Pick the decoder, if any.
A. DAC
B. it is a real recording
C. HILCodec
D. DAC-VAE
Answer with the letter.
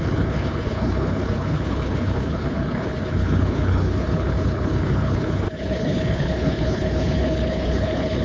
C